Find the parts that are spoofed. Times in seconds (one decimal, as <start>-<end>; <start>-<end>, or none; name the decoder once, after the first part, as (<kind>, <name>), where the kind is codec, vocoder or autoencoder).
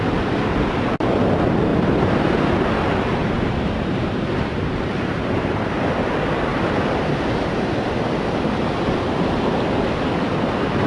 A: 1.7-2.6 (vocoder, BigVGAN v2); 3.2-5.5; 6.5-7.9